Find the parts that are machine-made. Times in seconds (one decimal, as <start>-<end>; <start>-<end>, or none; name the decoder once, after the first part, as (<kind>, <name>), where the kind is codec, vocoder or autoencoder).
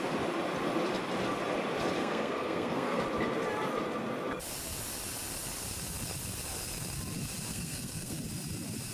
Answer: 2.0-3.0 (codec, SNAC); 7.5-8.2